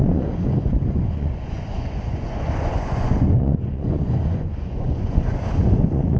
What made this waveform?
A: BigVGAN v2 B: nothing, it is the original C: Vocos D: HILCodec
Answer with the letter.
C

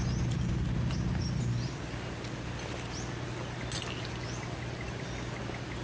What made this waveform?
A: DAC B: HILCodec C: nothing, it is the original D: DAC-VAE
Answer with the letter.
C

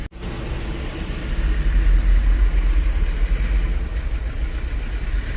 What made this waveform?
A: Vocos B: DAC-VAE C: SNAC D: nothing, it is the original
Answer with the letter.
D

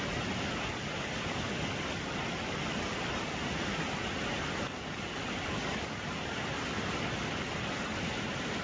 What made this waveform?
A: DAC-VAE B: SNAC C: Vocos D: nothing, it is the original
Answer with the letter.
D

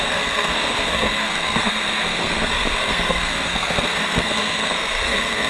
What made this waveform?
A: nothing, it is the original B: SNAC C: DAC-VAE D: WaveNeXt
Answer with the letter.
B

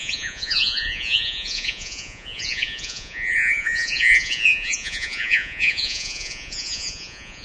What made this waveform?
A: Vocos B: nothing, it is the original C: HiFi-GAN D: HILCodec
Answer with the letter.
A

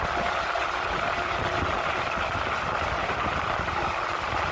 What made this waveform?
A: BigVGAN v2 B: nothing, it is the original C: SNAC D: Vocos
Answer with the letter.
B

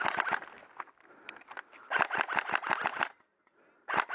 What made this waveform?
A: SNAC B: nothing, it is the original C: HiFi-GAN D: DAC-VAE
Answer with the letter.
B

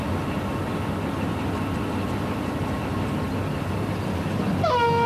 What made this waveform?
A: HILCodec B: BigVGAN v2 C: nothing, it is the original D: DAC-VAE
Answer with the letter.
C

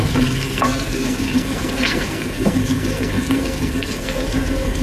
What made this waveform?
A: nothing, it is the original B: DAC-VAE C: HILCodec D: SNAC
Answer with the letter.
D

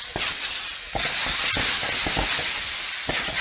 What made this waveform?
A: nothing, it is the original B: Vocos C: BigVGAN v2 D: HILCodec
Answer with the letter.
A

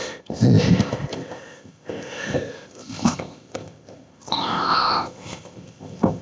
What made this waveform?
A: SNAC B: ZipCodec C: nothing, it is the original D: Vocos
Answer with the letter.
B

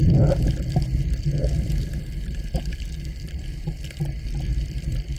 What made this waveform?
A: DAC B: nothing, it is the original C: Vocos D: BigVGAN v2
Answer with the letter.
D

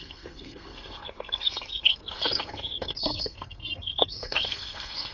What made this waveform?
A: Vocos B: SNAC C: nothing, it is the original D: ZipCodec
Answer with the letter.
B